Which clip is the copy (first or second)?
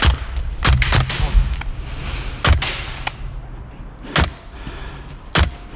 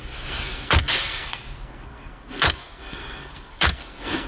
second